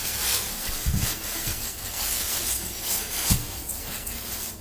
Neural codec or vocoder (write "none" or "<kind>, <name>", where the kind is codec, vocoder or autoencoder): codec, SNAC